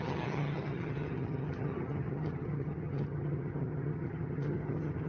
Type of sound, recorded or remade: remade